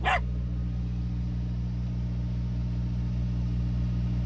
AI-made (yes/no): no